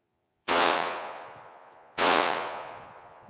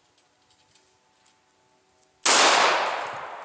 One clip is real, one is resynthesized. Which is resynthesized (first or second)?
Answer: first